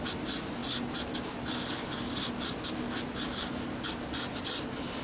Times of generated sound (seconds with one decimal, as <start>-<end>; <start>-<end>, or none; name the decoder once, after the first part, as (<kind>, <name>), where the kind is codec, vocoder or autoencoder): none